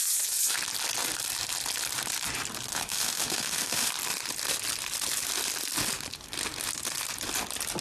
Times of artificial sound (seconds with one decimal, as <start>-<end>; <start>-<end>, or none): 2.7-3.9